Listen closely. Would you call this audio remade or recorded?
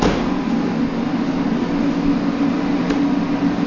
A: recorded